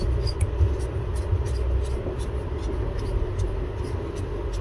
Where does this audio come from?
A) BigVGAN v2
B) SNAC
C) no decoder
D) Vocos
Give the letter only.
C